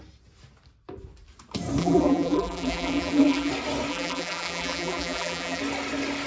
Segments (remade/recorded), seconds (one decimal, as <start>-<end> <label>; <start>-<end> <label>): 0.0-1.8 recorded; 1.8-3.5 remade; 3.5-3.9 recorded; 3.9-5.6 remade; 5.6-6.3 recorded